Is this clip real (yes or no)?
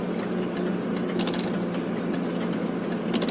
yes